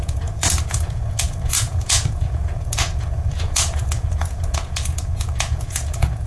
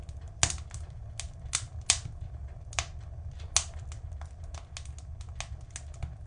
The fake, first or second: first